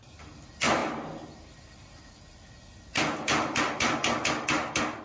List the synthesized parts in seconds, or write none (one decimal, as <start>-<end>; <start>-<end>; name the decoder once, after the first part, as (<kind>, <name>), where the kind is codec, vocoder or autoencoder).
2.9-3.6 (vocoder, BigVGAN v2)